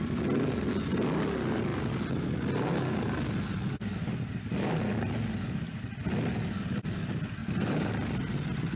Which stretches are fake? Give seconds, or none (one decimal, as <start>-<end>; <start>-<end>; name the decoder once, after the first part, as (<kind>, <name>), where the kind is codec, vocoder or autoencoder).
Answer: 7.4-7.9 (vocoder, BigVGAN v2)